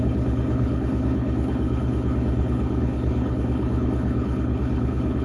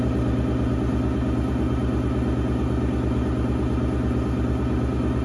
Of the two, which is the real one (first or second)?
second